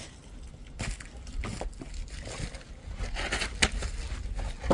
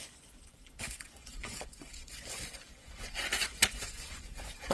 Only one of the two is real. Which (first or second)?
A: first